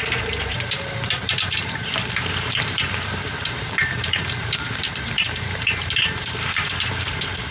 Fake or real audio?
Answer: fake